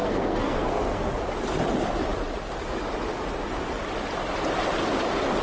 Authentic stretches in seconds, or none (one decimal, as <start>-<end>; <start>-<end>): 1.1-5.4